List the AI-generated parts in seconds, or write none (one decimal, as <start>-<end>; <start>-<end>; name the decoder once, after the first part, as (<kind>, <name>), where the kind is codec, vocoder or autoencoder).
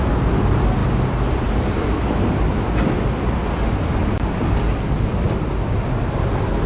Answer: none